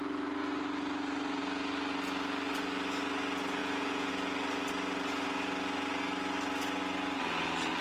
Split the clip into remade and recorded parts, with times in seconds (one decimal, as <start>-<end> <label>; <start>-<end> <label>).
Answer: 0.0-3.6 recorded; 3.6-4.1 remade; 4.1-7.8 recorded